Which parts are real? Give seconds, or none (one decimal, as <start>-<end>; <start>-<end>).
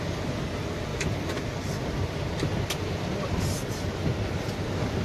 0.0-5.0